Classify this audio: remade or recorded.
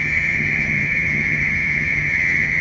remade